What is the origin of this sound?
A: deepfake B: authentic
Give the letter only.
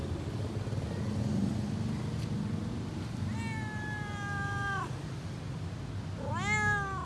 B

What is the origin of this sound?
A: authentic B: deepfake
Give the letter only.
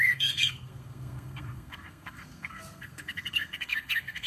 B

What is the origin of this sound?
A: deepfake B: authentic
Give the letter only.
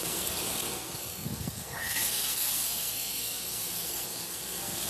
A